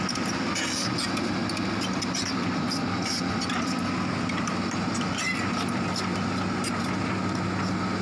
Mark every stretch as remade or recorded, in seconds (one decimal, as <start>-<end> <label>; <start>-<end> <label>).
0.0-8.0 recorded